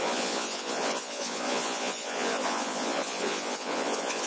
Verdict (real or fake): fake